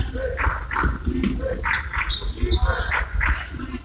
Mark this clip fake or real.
real